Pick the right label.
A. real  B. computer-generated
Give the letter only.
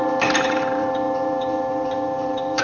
B